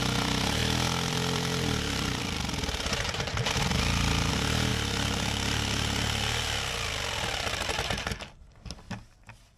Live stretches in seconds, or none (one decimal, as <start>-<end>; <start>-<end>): 4.7-8.5